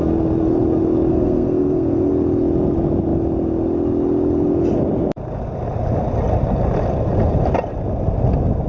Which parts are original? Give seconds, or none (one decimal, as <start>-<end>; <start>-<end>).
0.0-1.1; 2.1-8.7